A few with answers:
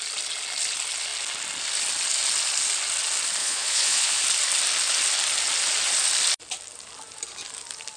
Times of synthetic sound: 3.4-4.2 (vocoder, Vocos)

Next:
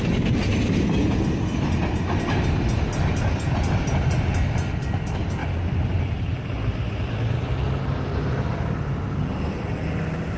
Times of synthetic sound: none

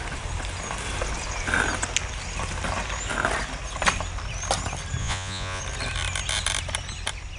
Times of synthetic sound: 5.0-5.6 (vocoder, Vocos)

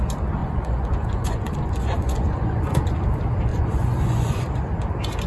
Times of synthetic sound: 0.4-3.1 (vocoder, Vocos); 3.5-4.4